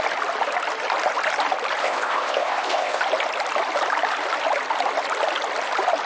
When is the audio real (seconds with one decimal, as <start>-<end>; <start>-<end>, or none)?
0.0-1.8; 3.0-6.1